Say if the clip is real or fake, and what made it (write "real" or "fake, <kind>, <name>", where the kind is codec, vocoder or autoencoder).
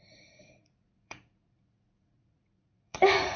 fake, vocoder, Vocos